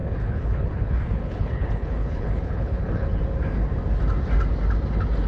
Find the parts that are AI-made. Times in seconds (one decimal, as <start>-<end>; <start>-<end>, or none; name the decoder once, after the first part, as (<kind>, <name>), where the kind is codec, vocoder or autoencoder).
0.0-3.2 (codec, HILCodec)